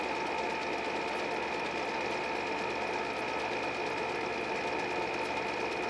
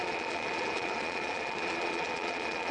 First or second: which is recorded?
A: first